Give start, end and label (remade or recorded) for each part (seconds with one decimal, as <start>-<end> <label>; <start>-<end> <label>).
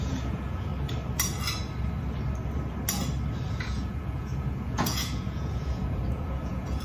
0.0-0.7 remade; 0.7-3.5 recorded; 3.5-6.8 remade